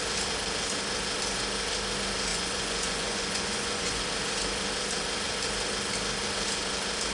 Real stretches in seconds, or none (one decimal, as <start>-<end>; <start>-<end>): 0.0-2.3; 4.0-7.1